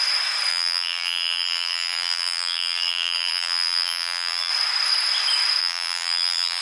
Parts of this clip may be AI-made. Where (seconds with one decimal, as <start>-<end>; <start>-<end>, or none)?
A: 0.5-4.5; 5.6-6.6